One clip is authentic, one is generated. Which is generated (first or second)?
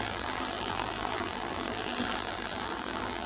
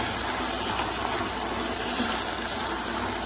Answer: first